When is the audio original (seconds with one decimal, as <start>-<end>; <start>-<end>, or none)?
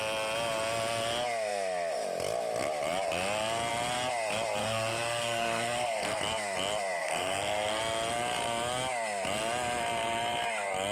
0.0-4.6; 6.2-7.0; 7.8-10.9